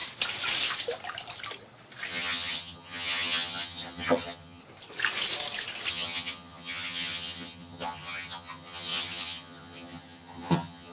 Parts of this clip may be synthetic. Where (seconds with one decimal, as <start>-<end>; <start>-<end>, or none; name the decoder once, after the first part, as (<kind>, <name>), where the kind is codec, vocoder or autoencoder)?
2.1-4.6 (vocoder, HiFi-GAN); 5.9-10.9